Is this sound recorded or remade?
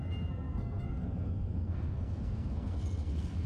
remade